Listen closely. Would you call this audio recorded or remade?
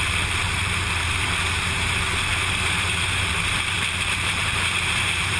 remade